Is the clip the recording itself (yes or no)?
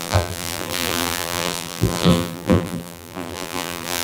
no